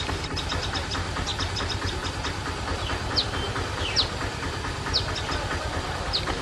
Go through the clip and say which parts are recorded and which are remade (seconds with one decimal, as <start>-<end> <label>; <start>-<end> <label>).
0.0-6.4 recorded